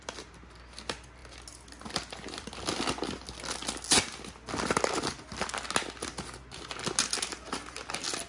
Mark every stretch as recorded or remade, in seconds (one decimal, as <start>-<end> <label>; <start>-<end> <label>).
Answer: 0.0-8.3 recorded